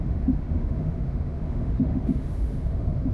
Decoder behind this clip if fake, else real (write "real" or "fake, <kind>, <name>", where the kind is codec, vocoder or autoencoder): fake, autoencoder, DAC-VAE